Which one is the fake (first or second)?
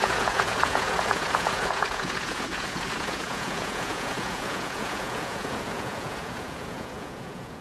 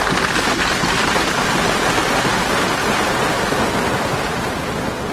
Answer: first